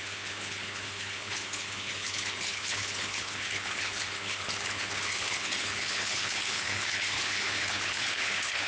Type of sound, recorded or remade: remade